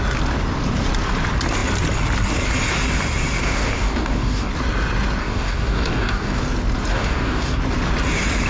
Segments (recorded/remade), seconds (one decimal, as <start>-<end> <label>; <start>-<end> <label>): 0.0-3.4 recorded; 3.4-4.5 remade; 4.5-5.2 recorded; 5.2-6.4 remade; 6.4-6.9 recorded; 6.9-7.6 remade; 7.6-8.5 recorded